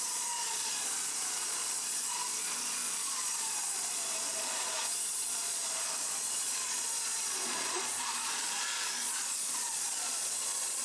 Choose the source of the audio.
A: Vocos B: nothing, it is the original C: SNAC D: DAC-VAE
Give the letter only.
A